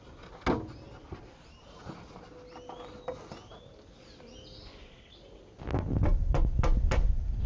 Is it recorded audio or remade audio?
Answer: recorded